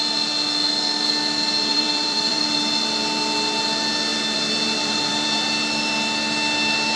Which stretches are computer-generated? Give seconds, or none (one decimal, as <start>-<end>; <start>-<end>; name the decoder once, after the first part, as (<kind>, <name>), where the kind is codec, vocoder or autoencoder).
1.7-2.6 (vocoder, BigVGAN v2); 4.1-5.4